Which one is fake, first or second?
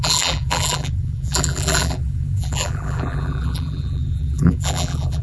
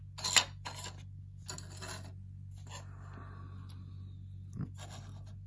first